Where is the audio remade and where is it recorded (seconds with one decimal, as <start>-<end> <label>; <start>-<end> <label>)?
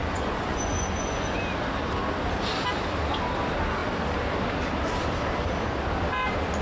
0.0-1.4 remade; 1.4-6.6 recorded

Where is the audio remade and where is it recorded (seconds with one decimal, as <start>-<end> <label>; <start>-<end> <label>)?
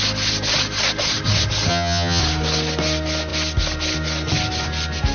0.0-1.7 recorded; 1.7-2.2 remade; 2.2-5.1 recorded